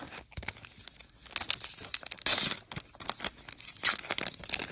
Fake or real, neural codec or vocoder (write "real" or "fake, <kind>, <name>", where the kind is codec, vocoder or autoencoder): real